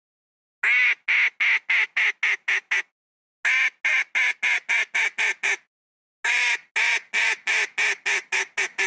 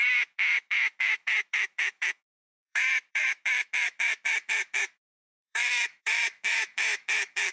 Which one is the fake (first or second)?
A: second